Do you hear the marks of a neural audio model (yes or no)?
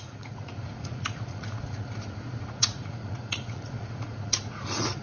yes